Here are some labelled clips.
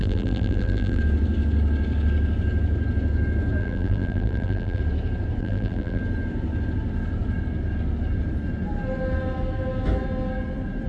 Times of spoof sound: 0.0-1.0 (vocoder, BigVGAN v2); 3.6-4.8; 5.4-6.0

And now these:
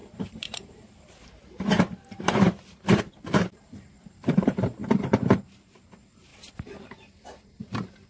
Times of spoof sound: 0.0-6.3 (vocoder, BigVGAN v2); 6.8-8.1